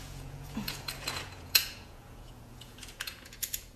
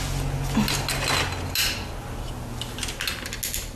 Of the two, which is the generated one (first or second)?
first